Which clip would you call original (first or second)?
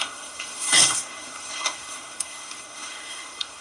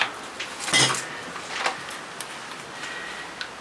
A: second